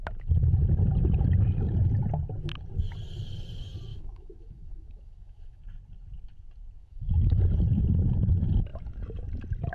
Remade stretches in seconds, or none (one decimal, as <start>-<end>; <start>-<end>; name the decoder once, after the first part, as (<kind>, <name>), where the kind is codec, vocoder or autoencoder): 3.9-5.6 (autoencoder, DAC-VAE); 6.8-7.4